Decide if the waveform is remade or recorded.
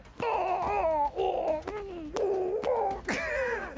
recorded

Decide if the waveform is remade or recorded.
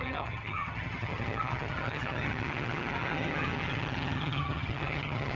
remade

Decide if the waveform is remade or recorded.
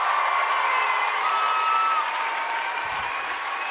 recorded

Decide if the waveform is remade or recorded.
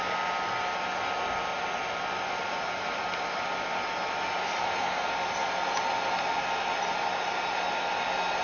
recorded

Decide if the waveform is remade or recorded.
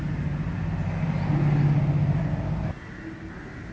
recorded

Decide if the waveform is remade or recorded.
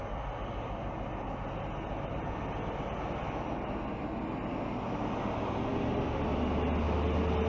recorded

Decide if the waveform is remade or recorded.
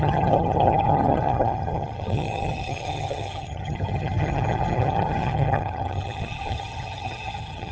remade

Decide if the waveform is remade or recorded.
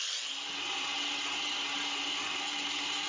recorded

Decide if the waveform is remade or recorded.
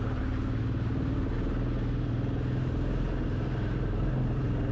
recorded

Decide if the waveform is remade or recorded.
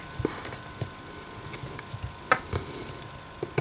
recorded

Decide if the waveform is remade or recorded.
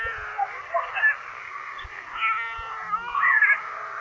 recorded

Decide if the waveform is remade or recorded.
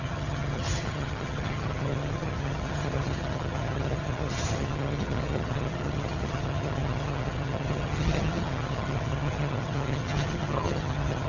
remade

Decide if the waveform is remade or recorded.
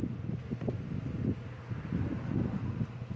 recorded